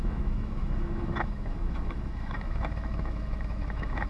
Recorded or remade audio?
remade